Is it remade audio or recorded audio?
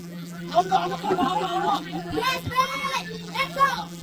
remade